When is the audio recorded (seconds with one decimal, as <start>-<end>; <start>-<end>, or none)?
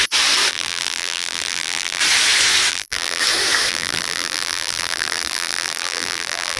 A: 0.0-0.5; 2.0-2.7; 3.2-3.7